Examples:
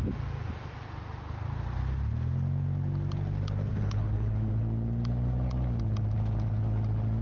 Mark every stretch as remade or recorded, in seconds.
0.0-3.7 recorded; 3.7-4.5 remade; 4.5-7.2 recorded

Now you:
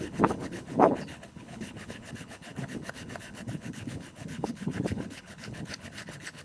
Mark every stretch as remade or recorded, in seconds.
0.0-6.4 remade

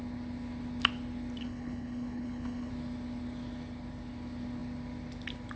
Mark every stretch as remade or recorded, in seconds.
0.0-1.4 recorded; 1.4-2.7 remade; 2.7-5.6 recorded

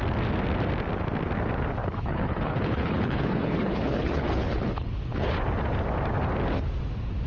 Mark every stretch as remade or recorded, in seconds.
0.0-1.8 recorded; 1.8-5.3 remade; 5.3-7.3 recorded

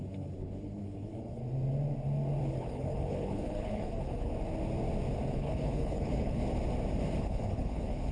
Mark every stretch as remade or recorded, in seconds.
0.0-1.4 remade; 1.4-2.4 recorded; 2.4-4.3 remade; 4.3-5.3 recorded; 5.3-6.4 remade; 6.4-7.2 recorded; 7.2-8.1 remade

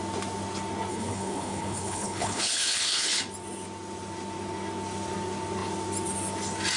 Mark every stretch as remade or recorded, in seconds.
0.0-0.9 recorded; 0.9-3.2 remade; 3.2-6.8 recorded